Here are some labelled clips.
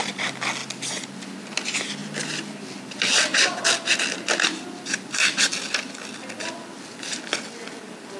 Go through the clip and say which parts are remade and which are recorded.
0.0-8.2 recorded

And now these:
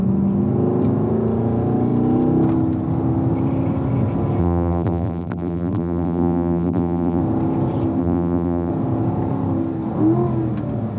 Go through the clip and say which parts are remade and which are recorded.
0.0-4.4 recorded; 4.4-7.2 remade; 7.2-8.0 recorded; 8.0-8.7 remade; 8.7-11.0 recorded

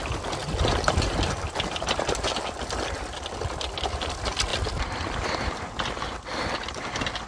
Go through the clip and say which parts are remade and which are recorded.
0.0-7.3 recorded

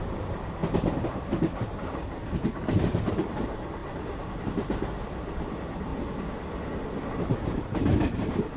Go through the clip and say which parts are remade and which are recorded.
0.0-0.6 remade; 0.6-2.8 recorded; 2.8-5.9 remade; 5.9-7.0 recorded; 7.0-8.6 remade

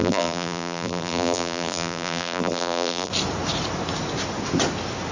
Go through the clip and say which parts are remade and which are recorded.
0.0-3.1 remade; 3.1-5.1 recorded

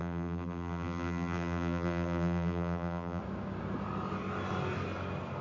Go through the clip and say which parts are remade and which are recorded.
0.0-3.2 remade; 3.2-5.4 recorded

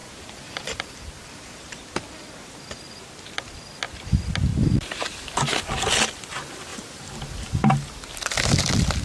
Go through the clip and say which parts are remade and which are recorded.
0.0-1.8 remade; 1.8-4.5 recorded; 4.5-5.1 remade; 5.1-6.7 recorded; 6.7-7.2 remade; 7.2-9.0 recorded